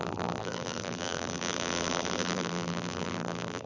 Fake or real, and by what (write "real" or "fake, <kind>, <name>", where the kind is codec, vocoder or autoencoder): fake, vocoder, BigVGAN v2